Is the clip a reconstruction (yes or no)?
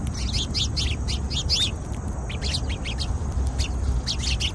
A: no